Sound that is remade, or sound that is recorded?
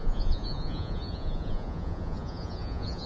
remade